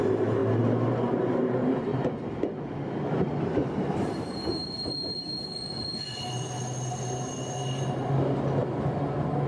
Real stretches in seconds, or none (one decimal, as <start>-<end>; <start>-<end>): 0.4-1.3; 1.9-3.4; 5.5-9.5